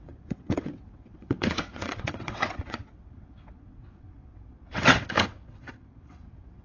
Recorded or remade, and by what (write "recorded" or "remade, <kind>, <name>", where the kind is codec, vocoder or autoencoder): remade, vocoder, WaveNeXt